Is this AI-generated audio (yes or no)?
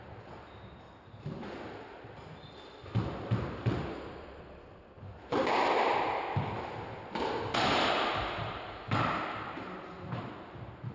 no